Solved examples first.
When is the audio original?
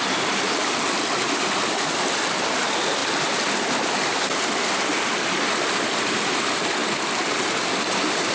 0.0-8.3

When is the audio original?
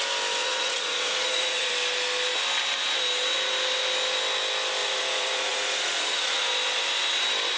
0.0-0.4; 1.7-4.8; 6.5-7.6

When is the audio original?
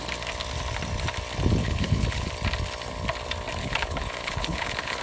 0.0-1.6; 2.3-3.6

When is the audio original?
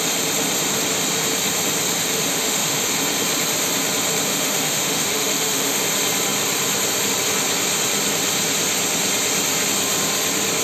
0.0-2.3; 2.9-4.3; 5.8-10.6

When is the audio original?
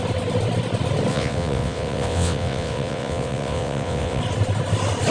0.0-1.1; 4.2-5.1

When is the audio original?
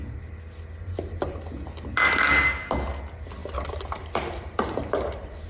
0.0-3.4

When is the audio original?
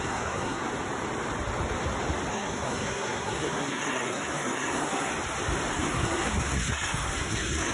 0.6-2.3; 5.1-5.7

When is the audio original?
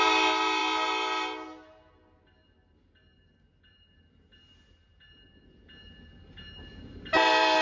0.0-7.6